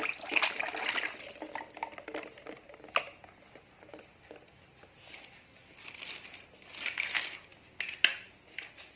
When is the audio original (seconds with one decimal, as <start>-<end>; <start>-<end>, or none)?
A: 0.0-9.0